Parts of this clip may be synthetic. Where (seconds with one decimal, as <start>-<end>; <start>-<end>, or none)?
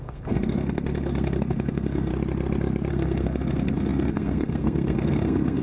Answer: 0.0-2.1; 2.9-5.6